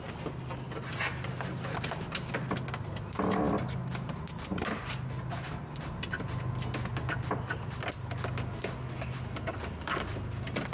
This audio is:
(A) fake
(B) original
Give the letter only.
B